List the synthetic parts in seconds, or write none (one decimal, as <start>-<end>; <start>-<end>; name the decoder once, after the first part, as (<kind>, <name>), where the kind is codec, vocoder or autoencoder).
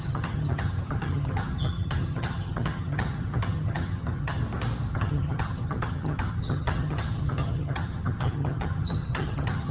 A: 0.0-4.4 (vocoder, HiFi-GAN); 4.9-9.7